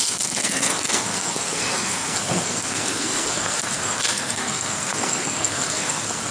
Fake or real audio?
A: fake